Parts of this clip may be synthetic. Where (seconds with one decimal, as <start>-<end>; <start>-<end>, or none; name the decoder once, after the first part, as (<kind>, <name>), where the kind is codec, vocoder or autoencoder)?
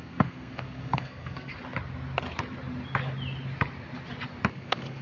0.0-1.5 (codec, SNAC); 4.5-5.0